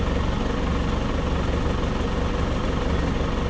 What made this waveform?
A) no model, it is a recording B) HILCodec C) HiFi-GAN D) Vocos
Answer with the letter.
A